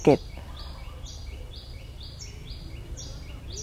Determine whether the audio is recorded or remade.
remade